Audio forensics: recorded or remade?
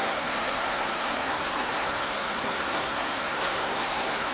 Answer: remade